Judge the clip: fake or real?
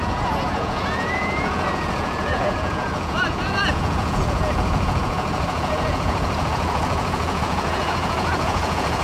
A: fake